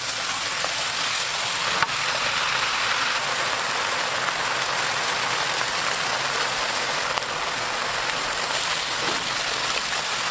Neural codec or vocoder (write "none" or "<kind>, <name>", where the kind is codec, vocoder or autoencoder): none